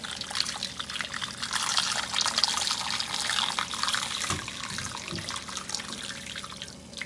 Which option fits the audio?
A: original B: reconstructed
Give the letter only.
A